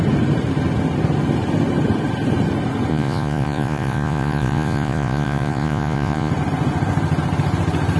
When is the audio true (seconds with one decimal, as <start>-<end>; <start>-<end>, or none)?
0.0-2.9; 6.3-8.0